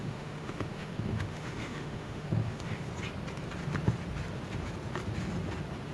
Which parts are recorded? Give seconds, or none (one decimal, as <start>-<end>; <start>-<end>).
2.9-5.9